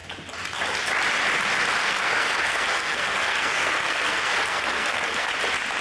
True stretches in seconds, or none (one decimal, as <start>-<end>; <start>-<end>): 0.0-1.8; 5.3-5.8